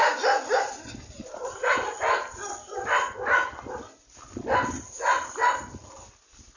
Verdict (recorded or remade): recorded